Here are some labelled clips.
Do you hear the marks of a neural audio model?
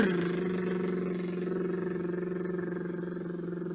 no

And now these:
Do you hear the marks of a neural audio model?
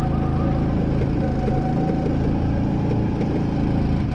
no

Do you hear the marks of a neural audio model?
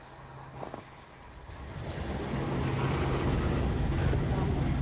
no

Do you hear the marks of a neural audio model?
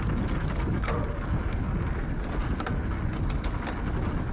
no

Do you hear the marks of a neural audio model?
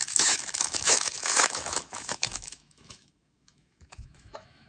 yes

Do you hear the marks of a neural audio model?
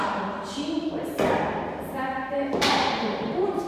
yes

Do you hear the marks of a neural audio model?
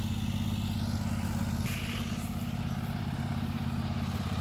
no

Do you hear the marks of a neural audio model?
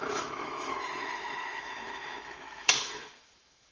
yes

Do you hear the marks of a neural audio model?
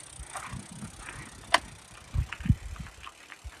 no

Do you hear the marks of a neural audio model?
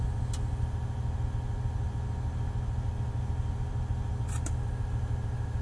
no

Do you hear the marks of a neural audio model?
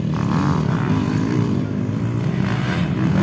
no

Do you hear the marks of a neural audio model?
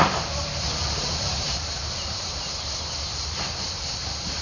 yes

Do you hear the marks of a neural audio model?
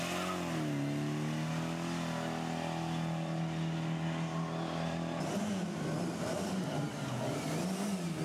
no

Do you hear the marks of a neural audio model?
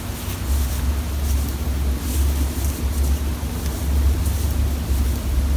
no